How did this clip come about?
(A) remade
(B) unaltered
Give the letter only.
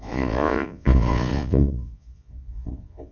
A